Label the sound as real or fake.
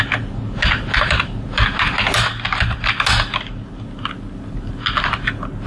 real